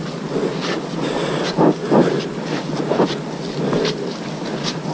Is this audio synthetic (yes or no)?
no